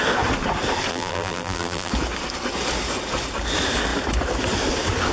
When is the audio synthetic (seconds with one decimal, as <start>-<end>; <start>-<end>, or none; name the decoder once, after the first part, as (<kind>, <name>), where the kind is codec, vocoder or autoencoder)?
0.9-1.9 (vocoder, BigVGAN v2)